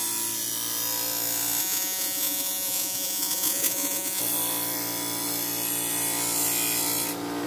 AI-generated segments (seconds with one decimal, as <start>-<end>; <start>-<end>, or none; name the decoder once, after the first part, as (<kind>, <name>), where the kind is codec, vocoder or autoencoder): 1.6-4.2 (vocoder, Vocos)